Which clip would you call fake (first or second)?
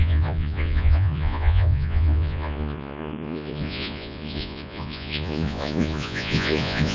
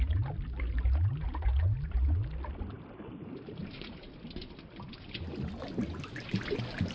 first